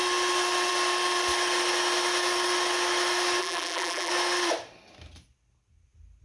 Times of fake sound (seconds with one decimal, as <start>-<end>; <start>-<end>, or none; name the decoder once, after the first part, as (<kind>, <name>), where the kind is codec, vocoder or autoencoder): 3.4-4.1 (vocoder, BigVGAN v2)